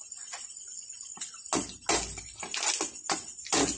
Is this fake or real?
real